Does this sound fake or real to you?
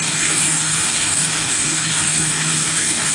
fake